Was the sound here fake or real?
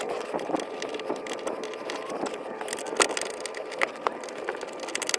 real